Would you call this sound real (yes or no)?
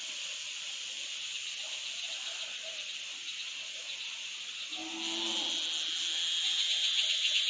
yes